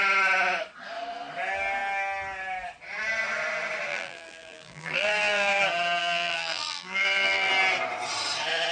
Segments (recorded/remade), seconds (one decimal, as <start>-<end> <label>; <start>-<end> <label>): 0.0-3.9 recorded; 3.9-5.6 remade; 5.6-6.0 recorded; 6.0-7.5 remade; 7.5-8.7 recorded